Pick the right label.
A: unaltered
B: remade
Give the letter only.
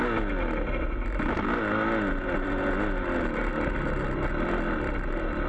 A